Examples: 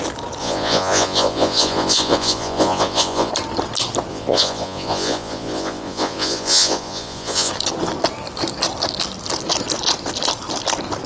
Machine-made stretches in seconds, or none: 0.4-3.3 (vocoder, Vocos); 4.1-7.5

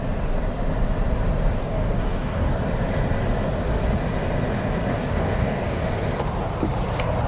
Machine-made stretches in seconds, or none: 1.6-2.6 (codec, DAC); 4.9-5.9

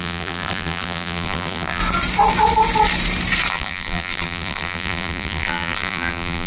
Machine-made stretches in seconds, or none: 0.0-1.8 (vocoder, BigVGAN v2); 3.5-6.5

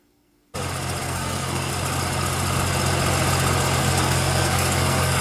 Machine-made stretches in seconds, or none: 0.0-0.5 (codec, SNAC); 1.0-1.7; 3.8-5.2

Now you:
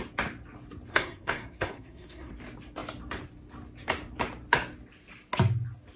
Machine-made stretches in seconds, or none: 0.9-2.3 (codec, SNAC)